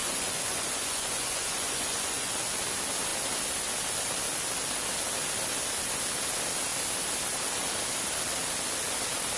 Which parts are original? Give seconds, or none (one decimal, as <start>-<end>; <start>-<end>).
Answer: 2.3-9.4